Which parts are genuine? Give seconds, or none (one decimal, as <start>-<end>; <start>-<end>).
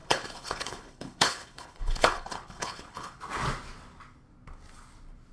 3.2-5.3